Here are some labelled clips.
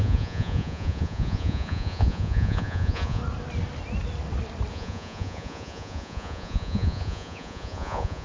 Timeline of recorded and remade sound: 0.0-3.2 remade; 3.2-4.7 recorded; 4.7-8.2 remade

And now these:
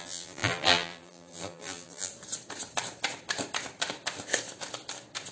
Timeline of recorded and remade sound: 0.0-2.1 remade; 2.1-5.3 recorded

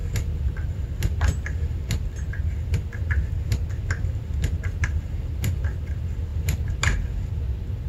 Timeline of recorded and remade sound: 0.0-6.3 recorded; 6.3-7.9 remade

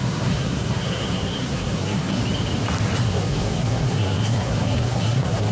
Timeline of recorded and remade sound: 0.0-2.2 remade; 2.2-3.0 recorded; 3.0-5.5 remade

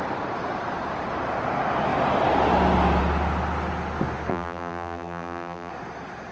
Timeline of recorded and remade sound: 0.0-4.3 recorded; 4.3-5.7 remade; 5.7-6.3 recorded